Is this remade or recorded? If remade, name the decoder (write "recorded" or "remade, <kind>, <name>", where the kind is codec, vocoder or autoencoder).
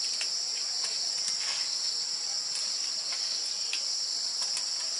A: recorded